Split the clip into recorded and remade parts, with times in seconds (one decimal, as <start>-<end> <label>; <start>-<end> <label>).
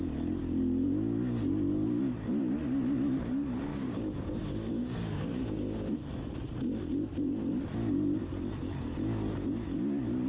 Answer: 0.0-3.7 recorded; 3.7-5.9 remade; 5.9-10.3 recorded